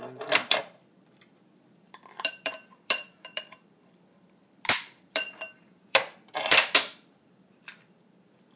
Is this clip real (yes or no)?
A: no